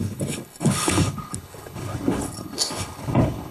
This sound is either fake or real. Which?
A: fake